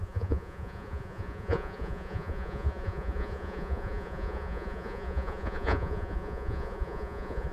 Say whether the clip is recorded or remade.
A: remade